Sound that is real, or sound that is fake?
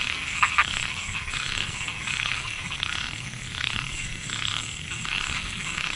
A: fake